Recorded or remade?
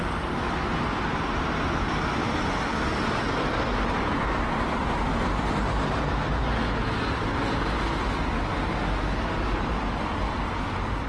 recorded